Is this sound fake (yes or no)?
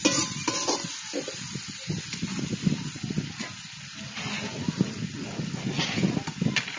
no